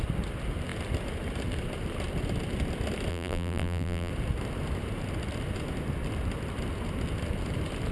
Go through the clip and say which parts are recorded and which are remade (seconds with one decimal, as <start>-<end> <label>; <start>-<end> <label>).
0.0-3.1 recorded; 3.1-4.1 remade; 4.1-7.9 recorded